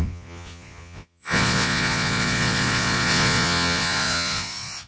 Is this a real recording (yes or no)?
no